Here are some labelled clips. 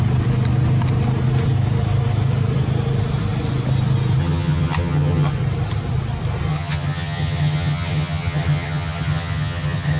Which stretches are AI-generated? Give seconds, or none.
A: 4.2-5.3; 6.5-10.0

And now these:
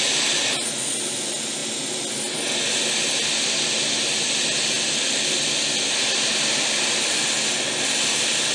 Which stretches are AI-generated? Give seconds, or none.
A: none

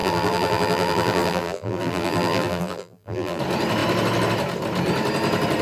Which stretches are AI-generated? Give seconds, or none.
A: 0.0-3.4

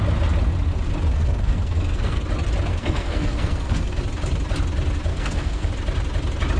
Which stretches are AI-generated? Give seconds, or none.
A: 1.1-2.2; 2.7-4.0; 5.1-5.7

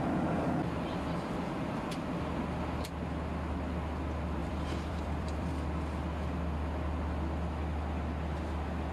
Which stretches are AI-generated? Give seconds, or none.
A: 4.4-5.5

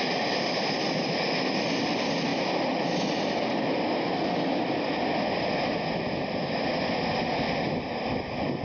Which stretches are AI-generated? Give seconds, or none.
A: none